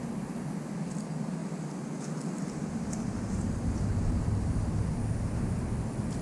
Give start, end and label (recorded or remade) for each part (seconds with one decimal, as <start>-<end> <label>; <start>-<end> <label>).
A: 0.0-6.2 recorded